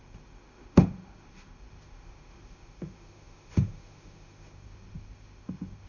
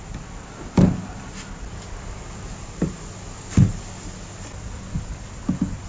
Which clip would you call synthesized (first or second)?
first